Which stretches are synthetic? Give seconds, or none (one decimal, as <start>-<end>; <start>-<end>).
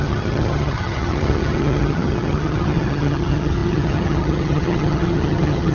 0.0-5.7